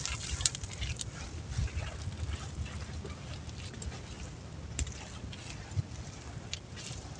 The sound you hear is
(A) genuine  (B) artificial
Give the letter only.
A